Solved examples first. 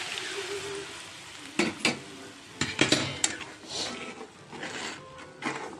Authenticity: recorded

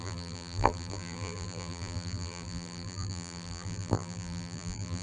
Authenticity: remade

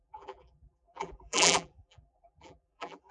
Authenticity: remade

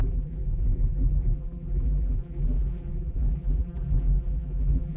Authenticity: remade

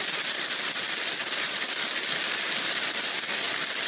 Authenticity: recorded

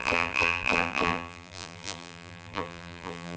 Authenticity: remade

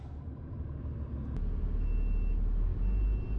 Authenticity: recorded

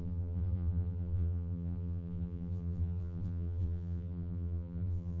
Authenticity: remade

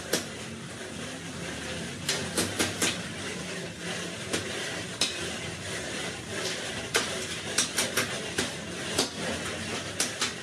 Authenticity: recorded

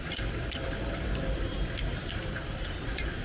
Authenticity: remade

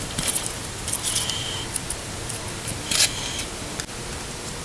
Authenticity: remade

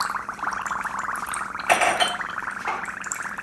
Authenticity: remade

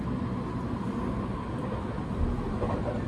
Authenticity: recorded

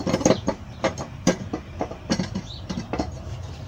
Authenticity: remade